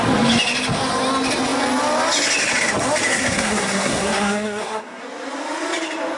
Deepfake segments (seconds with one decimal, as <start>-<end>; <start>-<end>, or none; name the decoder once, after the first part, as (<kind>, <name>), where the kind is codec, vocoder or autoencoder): 3.1-5.0 (codec, SNAC)